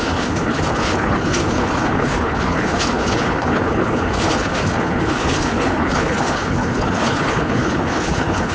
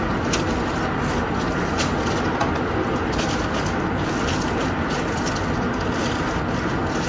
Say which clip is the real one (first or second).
second